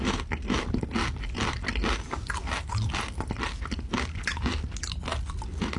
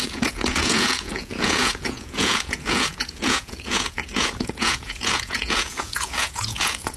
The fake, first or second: second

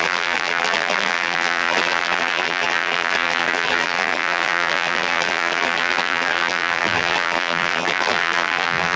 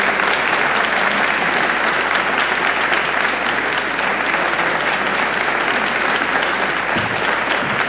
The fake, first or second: first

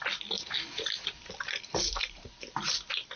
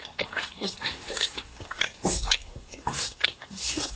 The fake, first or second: second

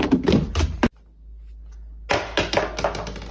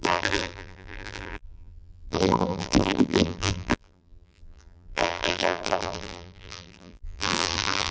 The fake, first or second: second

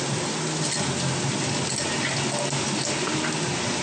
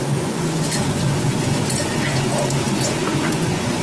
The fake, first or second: second